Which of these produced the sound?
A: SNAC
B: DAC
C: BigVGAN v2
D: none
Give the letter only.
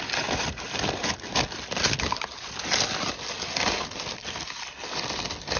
D